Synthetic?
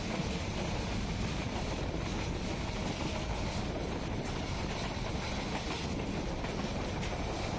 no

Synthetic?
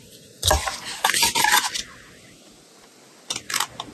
no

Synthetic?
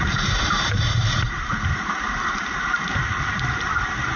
yes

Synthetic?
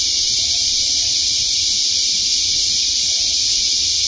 yes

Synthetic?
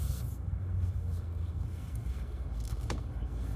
yes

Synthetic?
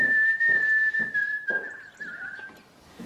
no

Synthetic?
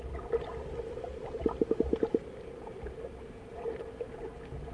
no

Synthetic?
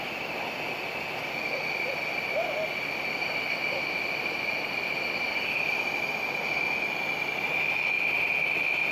no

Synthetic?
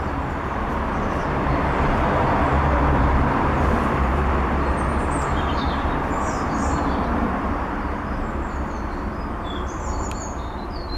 yes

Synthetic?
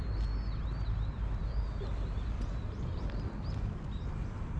no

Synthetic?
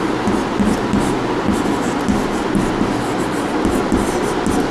no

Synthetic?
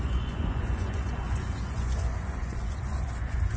yes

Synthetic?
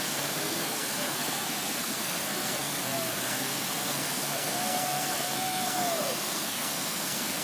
yes